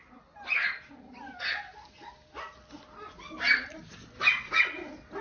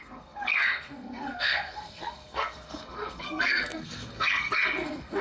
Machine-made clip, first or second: second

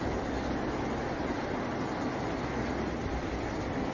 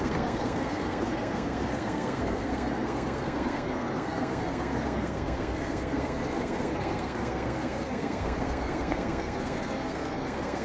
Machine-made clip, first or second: second